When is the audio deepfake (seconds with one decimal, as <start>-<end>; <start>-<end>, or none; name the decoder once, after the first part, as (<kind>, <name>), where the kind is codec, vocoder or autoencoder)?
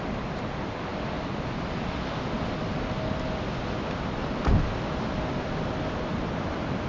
6.1-6.9 (vocoder, BigVGAN v2)